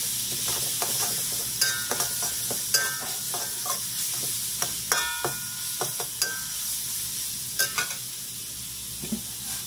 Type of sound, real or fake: real